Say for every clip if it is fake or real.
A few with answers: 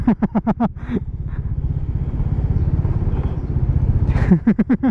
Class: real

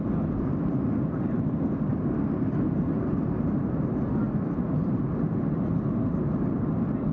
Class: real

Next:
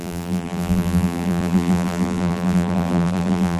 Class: fake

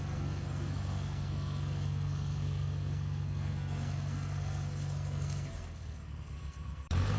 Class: fake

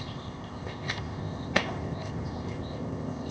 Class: fake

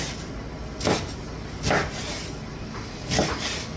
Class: real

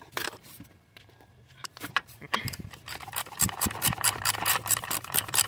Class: fake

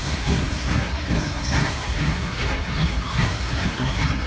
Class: fake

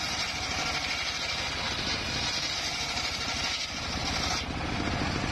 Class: real